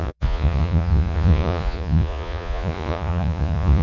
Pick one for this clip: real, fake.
fake